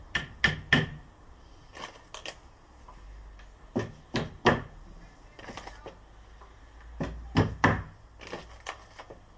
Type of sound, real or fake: real